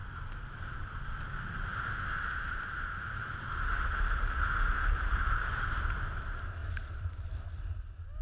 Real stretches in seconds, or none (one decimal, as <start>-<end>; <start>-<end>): 0.0-0.8; 1.7-4.8